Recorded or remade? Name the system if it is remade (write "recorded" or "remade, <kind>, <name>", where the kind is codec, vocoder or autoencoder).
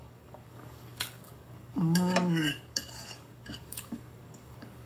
remade, codec, DAC